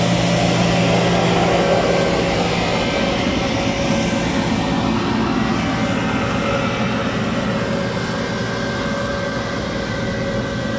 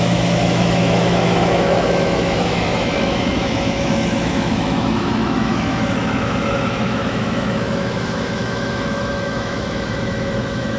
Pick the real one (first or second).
first